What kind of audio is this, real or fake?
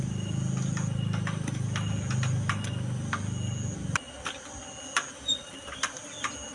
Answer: real